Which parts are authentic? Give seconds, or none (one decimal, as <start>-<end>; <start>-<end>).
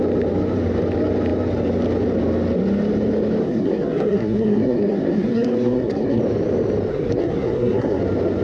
0.0-3.4; 6.2-6.9; 8.0-8.4